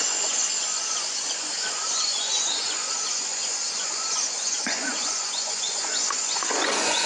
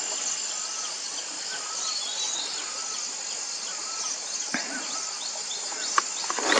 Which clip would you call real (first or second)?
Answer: second